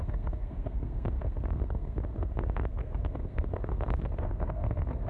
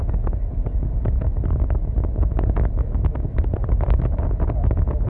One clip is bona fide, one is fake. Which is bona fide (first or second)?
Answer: second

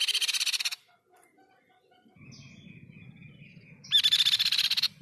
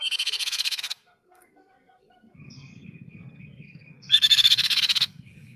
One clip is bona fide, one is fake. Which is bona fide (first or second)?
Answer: first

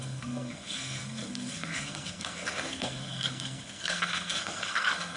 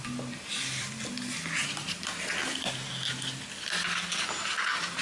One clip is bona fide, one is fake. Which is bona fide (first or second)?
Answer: second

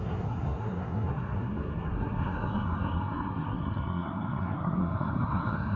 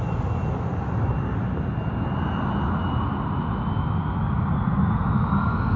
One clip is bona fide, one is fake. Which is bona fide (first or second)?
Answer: second